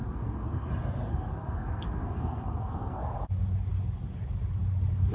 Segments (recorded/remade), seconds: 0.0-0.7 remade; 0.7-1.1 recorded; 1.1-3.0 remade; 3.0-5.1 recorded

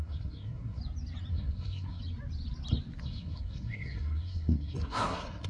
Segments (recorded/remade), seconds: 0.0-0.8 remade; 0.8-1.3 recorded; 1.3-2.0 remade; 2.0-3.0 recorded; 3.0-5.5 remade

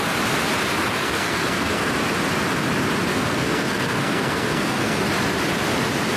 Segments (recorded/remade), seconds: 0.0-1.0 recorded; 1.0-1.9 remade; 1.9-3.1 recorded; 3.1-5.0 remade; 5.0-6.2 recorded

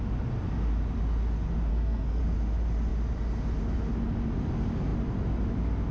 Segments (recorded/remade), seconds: 0.0-1.7 recorded; 1.7-2.2 remade; 2.2-5.9 recorded

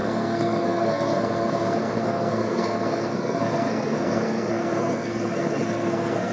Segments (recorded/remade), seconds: 0.0-6.3 remade

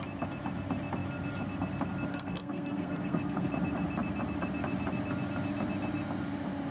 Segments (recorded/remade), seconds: 0.0-2.1 recorded; 2.1-3.5 remade; 3.5-6.7 recorded